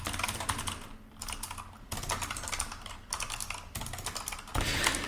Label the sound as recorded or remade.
recorded